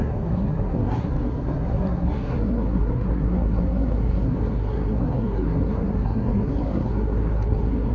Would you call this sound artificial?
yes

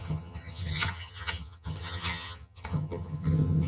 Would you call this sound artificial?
yes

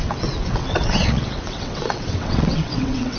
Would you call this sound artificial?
yes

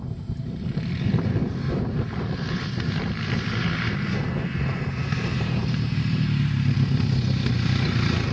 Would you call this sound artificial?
yes